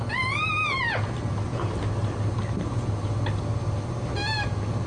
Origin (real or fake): real